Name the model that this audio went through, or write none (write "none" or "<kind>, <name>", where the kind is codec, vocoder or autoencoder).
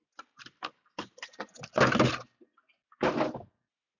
none